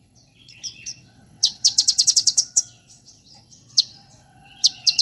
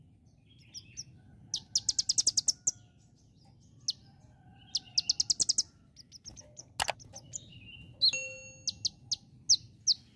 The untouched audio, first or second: second